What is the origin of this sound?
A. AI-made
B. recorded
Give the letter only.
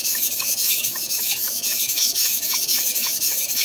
A